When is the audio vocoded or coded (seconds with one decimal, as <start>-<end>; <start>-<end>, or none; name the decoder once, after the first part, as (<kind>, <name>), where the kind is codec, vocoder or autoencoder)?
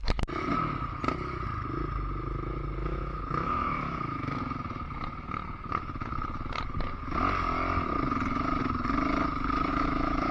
2.8-4.4 (autoencoder, DAC-VAE); 9.7-10.3